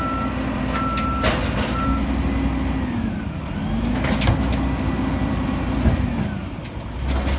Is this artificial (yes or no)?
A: no